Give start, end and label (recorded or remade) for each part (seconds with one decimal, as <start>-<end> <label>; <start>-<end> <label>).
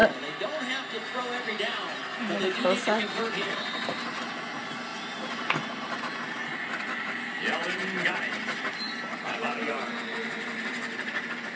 0.0-4.9 recorded; 4.9-6.0 remade; 6.0-11.6 recorded